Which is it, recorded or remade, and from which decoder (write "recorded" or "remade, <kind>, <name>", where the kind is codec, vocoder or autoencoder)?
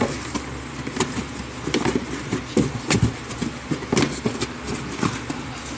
recorded